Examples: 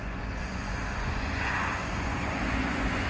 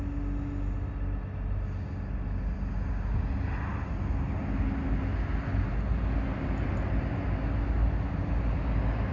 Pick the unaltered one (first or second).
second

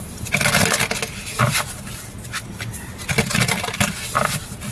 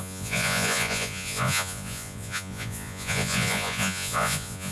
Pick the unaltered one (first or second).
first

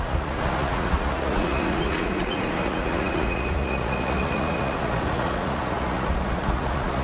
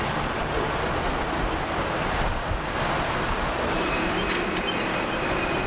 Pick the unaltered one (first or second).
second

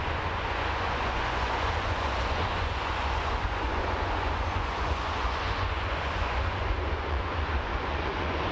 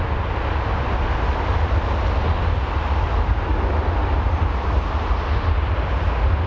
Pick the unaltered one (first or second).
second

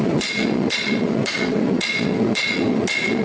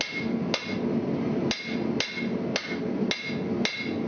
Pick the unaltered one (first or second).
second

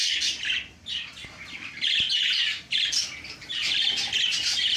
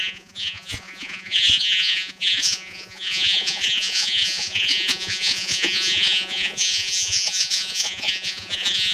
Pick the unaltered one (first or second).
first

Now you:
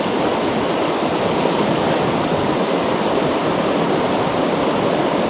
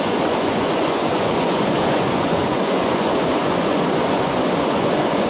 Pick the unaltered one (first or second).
first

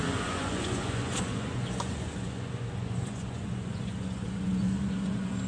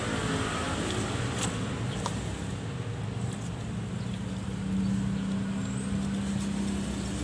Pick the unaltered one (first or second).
second